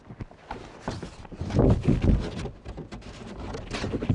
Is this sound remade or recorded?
recorded